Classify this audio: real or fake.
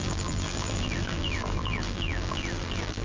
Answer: fake